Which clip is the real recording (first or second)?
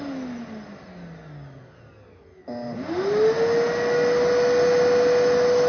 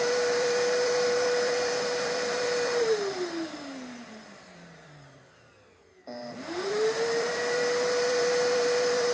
first